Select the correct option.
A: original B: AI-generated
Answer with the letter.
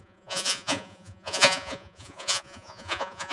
B